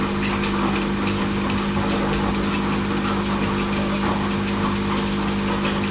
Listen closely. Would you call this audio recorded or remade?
recorded